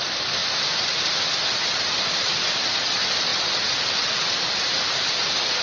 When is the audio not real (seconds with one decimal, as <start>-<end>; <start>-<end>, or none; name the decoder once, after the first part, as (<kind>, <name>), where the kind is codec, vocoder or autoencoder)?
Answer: 0.0-5.6 (vocoder, BigVGAN v2)